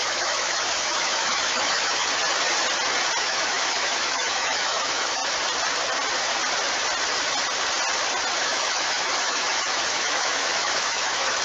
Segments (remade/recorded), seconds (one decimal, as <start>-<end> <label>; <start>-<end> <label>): 0.0-2.1 remade; 2.1-3.2 recorded; 3.2-5.2 remade; 5.2-8.4 recorded; 8.4-11.4 remade